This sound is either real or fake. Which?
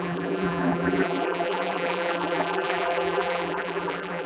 fake